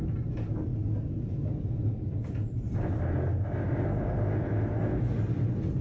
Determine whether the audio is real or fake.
real